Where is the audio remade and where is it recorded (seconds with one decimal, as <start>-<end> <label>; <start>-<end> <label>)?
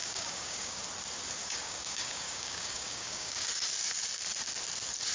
0.0-0.8 remade; 0.8-1.4 recorded; 1.4-3.5 remade; 3.5-5.1 recorded